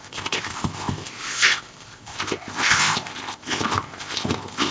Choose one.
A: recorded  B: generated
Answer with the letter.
B